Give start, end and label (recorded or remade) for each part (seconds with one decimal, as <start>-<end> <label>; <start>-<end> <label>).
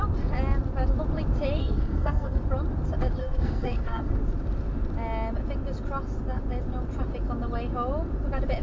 0.0-1.6 recorded; 1.6-2.4 remade; 2.4-3.2 recorded; 3.2-4.2 remade; 4.2-8.6 recorded